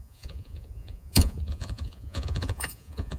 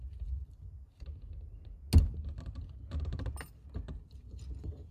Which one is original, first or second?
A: second